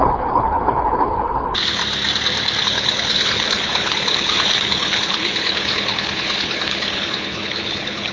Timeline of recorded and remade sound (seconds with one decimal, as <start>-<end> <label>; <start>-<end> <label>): 0.0-1.8 remade; 1.8-2.6 recorded; 2.6-8.1 remade